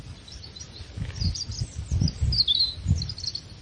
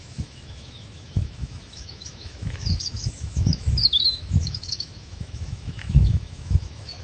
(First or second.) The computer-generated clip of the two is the second